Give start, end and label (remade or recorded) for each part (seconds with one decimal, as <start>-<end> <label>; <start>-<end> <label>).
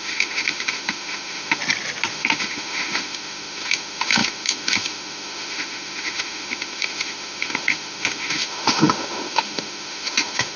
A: 0.0-1.6 remade; 1.6-2.1 recorded; 2.1-10.6 remade